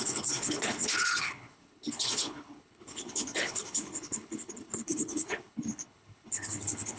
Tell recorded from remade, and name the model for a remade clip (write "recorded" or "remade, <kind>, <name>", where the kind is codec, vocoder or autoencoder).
remade, codec, HILCodec